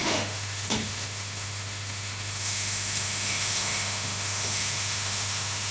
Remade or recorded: remade